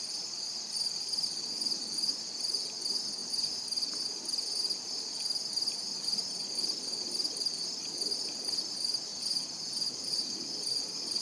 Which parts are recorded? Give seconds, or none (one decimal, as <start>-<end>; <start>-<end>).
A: 0.0-9.1; 10.5-11.2